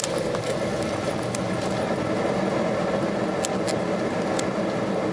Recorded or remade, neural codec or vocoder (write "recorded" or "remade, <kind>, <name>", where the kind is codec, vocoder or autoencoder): recorded